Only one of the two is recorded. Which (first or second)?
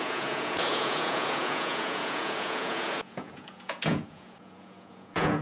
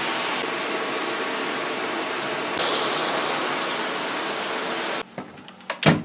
second